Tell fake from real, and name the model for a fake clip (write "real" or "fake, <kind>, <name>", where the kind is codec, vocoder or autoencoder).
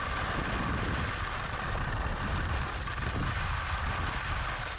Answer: real